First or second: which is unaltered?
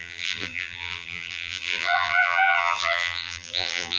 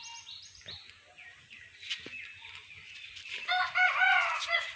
second